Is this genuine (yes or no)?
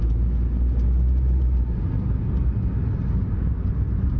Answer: yes